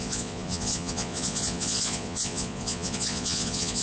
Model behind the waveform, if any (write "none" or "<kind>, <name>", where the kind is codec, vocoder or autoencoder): vocoder, Vocos